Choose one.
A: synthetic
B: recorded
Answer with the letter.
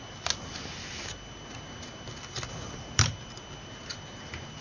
B